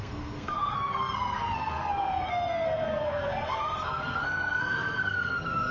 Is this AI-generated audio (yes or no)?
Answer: yes